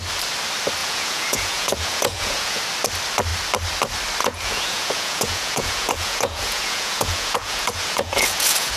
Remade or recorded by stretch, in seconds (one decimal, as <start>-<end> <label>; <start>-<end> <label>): 0.0-0.8 recorded; 0.8-2.6 remade; 2.6-4.2 recorded; 4.2-8.8 remade